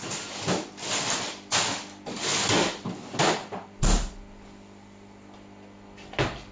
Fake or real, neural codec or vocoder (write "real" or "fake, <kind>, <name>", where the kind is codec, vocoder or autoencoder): real